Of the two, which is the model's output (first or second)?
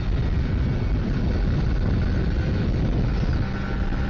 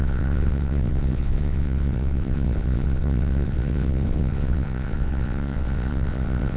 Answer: second